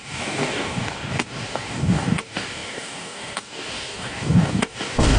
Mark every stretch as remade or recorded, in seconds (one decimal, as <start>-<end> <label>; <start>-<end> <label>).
0.0-5.2 remade